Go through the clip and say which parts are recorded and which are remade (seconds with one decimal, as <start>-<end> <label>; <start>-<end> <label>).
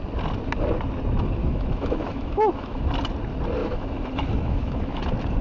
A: 0.0-1.4 recorded; 1.4-2.9 remade; 2.9-3.6 recorded; 3.6-5.0 remade; 5.0-5.4 recorded